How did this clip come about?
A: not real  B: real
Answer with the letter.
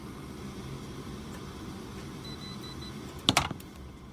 A